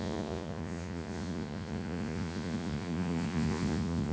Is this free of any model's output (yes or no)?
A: no